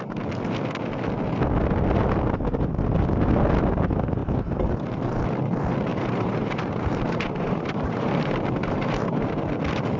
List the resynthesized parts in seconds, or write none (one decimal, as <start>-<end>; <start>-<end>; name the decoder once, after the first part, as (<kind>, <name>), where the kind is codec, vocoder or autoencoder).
5.9-9.5 (vocoder, BigVGAN v2)